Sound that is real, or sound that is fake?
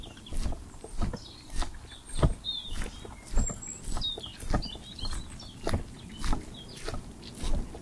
real